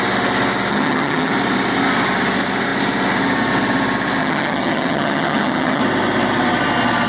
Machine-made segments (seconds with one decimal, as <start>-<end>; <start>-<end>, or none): 0.7-1.3; 4.2-5.8